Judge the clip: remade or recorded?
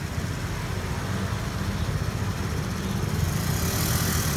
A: recorded